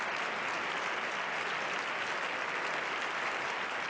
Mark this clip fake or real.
real